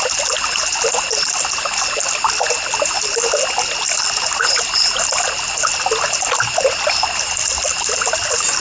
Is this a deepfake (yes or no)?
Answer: no